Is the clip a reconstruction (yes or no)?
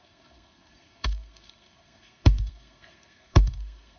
yes